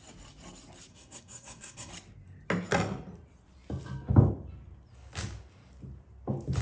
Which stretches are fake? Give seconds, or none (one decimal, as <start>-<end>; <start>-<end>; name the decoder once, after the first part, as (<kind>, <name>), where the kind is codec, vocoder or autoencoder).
0.9-1.9 (codec, SNAC)